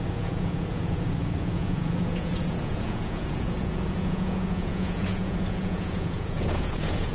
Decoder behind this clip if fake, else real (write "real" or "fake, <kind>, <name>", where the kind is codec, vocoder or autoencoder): fake, vocoder, Vocos